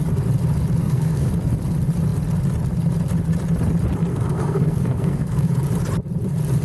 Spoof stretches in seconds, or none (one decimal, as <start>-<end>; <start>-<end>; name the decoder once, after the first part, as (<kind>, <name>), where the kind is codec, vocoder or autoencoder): 0.8-1.3 (codec, SNAC); 4.1-5.5